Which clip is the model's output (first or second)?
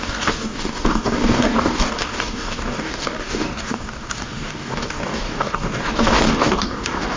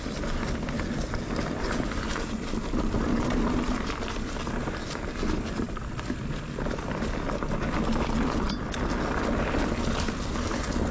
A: first